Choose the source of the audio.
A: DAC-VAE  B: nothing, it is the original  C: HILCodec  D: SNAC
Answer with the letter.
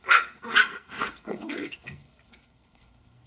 D